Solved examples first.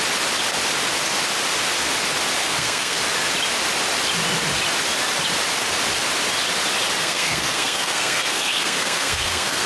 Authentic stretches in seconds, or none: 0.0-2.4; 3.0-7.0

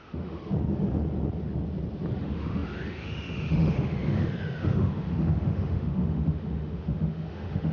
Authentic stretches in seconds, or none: 0.4-2.2

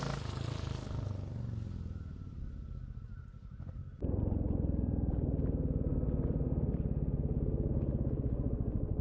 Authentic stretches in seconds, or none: 0.0-9.0

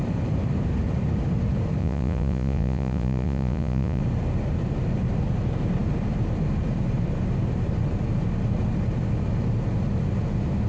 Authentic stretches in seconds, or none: 0.0-1.8; 4.0-10.7

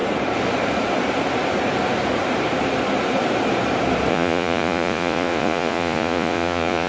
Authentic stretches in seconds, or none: 0.0-4.1

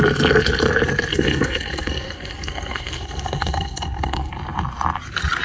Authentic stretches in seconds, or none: 0.0-1.1; 4.3-5.4